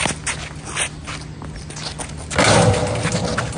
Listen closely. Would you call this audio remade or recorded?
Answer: recorded